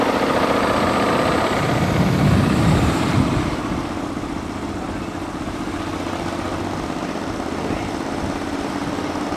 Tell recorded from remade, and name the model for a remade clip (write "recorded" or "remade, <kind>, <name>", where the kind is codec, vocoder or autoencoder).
recorded